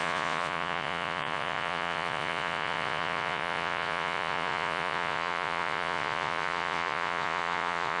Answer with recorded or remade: remade